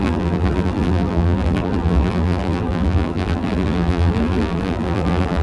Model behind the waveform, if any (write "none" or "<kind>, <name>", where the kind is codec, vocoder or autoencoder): vocoder, BigVGAN v2